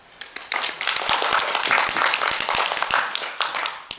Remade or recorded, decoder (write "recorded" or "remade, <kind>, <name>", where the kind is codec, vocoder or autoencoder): recorded